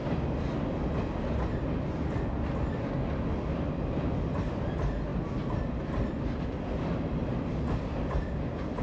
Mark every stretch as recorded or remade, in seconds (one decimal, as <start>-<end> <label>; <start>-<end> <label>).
0.0-8.8 recorded